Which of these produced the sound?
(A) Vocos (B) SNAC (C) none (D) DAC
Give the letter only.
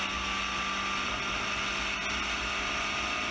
C